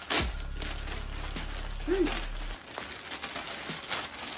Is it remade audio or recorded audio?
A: recorded